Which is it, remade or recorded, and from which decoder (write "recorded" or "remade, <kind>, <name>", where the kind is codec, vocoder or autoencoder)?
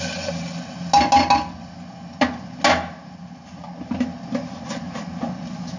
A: recorded